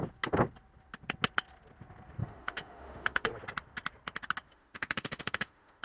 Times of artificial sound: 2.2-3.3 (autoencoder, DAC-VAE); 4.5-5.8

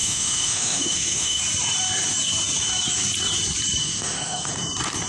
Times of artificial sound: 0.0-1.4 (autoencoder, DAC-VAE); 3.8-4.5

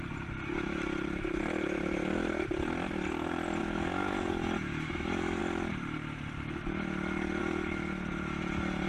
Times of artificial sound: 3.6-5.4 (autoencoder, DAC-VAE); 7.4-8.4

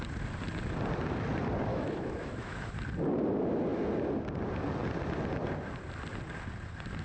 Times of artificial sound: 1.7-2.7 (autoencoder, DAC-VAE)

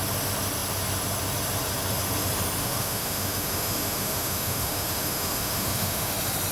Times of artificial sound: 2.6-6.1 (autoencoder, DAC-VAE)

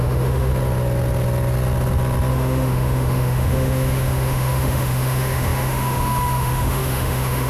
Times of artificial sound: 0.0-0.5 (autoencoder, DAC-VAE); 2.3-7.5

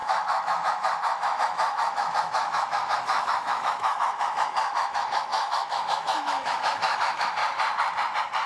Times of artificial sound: 0.0-7.4 (autoencoder, DAC-VAE)

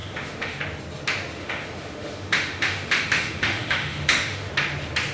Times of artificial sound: 0.0-0.6 (autoencoder, DAC-VAE); 1.4-4.5